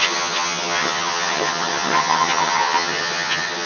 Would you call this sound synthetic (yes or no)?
yes